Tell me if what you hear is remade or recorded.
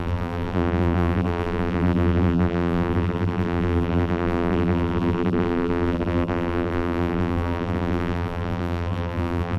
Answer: remade